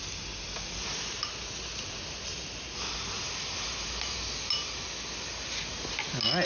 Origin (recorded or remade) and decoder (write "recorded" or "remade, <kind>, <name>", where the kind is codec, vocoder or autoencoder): recorded